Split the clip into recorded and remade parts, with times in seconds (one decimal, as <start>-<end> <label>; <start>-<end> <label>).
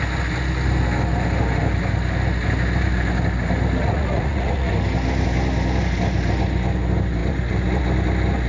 0.0-3.8 recorded; 3.8-4.7 remade; 4.7-8.5 recorded